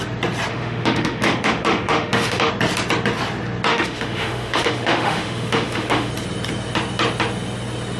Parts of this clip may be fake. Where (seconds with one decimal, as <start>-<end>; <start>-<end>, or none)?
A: 0.5-2.5; 3.7-6.1